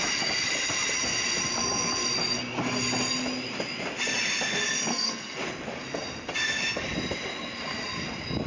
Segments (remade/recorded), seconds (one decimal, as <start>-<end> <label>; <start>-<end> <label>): 0.0-4.9 recorded; 4.9-5.4 remade; 5.4-8.5 recorded